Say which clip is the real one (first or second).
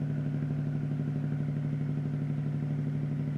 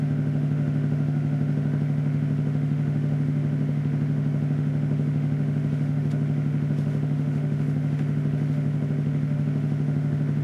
first